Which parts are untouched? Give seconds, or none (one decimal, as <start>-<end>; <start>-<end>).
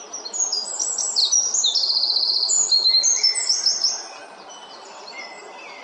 0.0-5.8